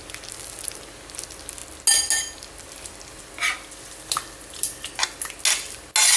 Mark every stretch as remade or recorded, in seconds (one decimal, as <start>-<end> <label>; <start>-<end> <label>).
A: 0.0-6.2 recorded

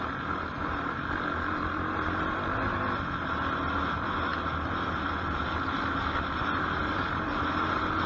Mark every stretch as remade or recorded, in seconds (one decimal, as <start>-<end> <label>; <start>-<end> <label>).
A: 0.0-8.1 recorded

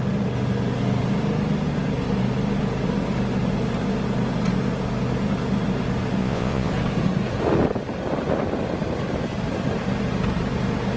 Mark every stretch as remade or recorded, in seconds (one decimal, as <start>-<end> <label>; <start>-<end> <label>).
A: 0.0-6.2 recorded; 6.2-6.7 remade; 6.7-11.0 recorded

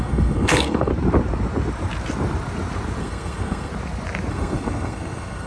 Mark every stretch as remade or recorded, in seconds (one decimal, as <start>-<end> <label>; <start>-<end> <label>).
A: 0.0-0.9 remade; 0.9-3.0 recorded; 3.0-3.7 remade; 3.7-4.3 recorded; 4.3-5.5 remade